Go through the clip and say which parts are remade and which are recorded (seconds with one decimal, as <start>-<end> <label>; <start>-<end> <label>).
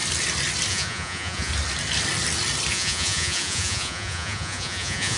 0.0-0.7 recorded; 0.7-1.5 remade; 1.5-2.7 recorded; 2.7-5.2 remade